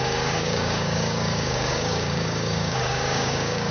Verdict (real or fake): fake